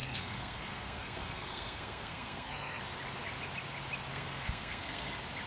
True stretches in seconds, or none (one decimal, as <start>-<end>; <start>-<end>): 2.8-4.1; 5.1-5.5